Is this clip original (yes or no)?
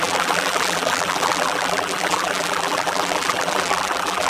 no